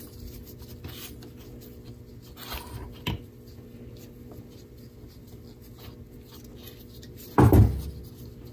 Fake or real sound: real